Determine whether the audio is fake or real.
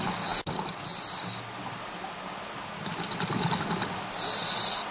real